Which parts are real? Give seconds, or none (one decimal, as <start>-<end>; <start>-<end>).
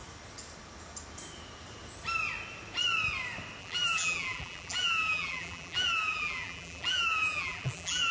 0.0-3.6